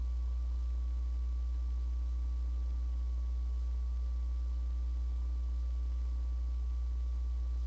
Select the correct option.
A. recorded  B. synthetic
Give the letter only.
A